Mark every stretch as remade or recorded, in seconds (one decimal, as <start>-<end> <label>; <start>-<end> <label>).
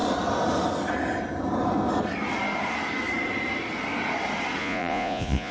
0.0-4.6 recorded; 4.6-5.5 remade